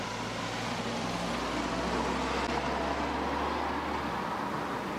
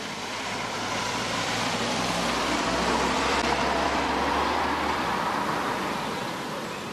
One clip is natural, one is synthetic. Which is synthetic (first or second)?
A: second